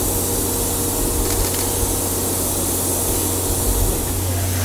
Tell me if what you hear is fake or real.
real